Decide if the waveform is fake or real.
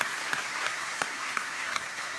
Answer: fake